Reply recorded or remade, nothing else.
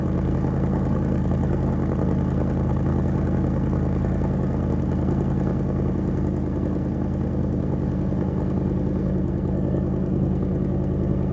remade